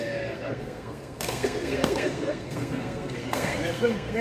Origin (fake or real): fake